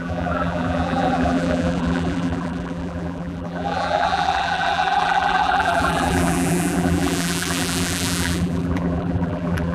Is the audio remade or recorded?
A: remade